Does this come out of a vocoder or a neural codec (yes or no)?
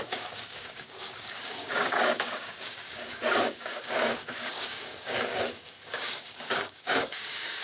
yes